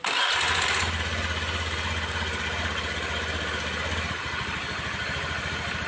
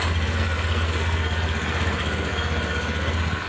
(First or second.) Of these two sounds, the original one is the first